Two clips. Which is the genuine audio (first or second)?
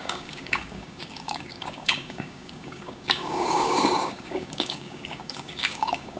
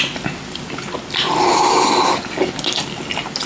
second